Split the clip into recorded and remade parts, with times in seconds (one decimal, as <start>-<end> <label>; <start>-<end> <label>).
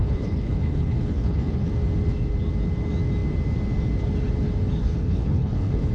0.0-1.7 remade; 1.7-4.8 recorded; 4.8-5.9 remade